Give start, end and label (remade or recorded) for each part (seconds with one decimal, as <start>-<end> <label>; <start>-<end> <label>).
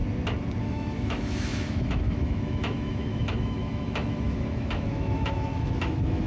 0.0-0.6 recorded; 0.6-6.3 remade